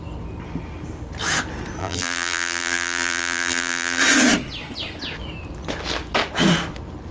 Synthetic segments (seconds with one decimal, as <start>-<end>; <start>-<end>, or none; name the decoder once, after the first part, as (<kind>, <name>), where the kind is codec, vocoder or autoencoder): 1.8-4.0 (vocoder, BigVGAN v2)